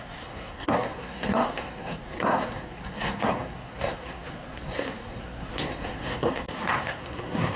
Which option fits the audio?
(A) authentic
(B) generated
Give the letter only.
B